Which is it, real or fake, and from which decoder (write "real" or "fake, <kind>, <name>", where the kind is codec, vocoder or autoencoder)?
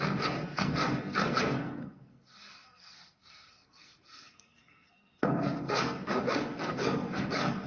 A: fake, codec, SNAC